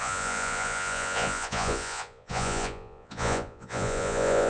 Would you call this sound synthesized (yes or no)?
yes